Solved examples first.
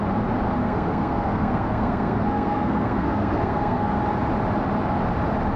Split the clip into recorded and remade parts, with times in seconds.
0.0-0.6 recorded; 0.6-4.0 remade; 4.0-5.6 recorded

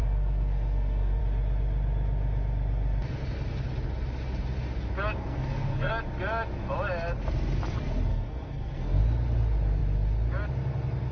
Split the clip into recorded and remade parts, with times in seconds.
0.0-1.2 remade; 1.2-5.2 recorded; 5.2-5.9 remade; 5.9-8.1 recorded; 8.1-9.0 remade; 9.0-11.1 recorded

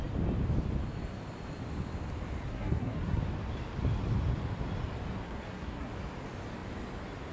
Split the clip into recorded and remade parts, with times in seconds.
0.0-2.5 recorded; 2.5-3.2 remade; 3.2-5.2 recorded; 5.2-5.9 remade; 5.9-7.3 recorded

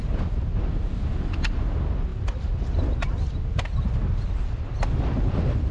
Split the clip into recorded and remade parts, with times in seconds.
0.0-5.7 recorded